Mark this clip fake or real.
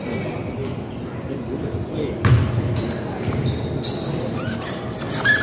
fake